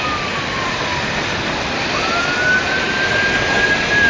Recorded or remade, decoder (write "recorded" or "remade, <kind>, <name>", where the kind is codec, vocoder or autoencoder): recorded